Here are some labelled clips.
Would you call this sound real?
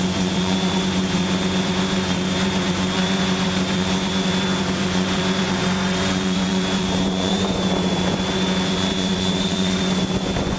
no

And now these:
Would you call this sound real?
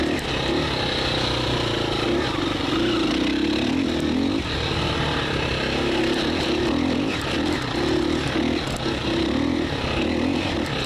yes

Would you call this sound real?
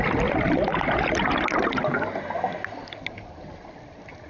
yes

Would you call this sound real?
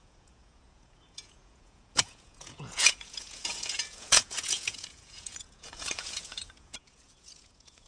no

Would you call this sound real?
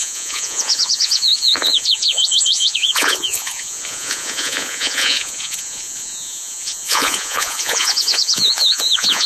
no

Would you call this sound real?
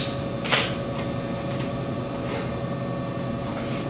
yes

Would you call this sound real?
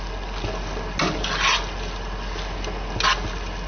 yes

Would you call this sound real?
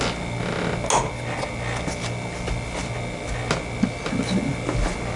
yes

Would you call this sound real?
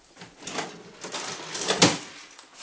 yes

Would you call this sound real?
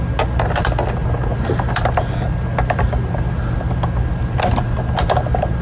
yes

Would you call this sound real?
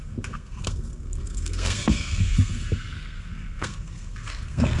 no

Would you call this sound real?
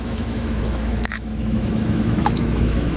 no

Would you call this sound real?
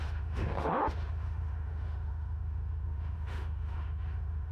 no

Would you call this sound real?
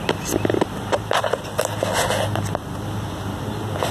yes